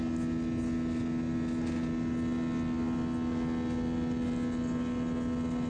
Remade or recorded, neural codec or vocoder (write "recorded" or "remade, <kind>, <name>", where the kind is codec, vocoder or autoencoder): recorded